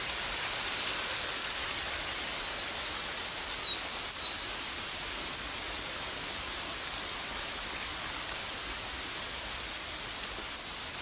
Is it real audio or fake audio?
real